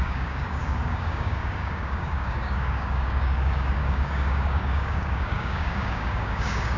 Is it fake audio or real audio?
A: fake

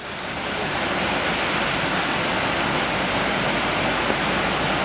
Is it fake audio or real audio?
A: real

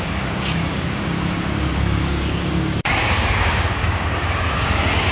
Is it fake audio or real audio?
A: fake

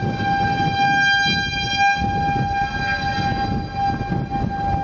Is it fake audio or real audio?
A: real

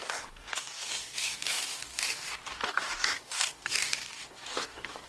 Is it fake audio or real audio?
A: fake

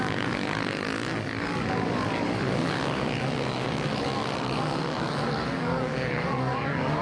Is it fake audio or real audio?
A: fake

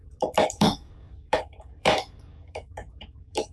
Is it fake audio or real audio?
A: fake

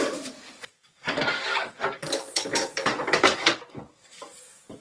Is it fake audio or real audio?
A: fake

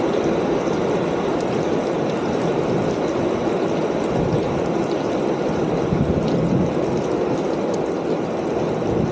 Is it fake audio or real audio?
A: real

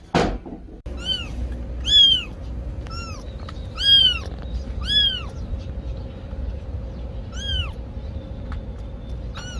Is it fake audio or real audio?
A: real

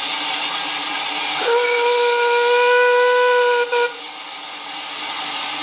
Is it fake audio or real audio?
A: real